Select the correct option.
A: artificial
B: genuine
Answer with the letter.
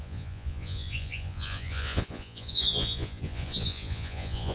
A